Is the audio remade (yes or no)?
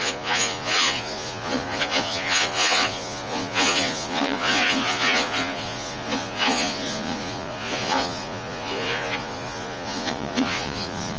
yes